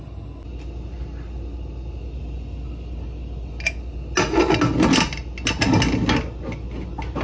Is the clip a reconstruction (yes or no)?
no